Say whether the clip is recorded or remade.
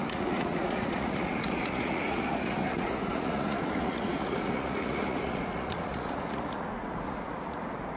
remade